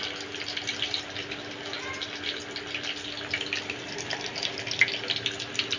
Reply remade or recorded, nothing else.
recorded